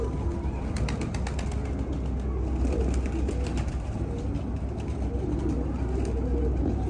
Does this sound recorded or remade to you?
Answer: recorded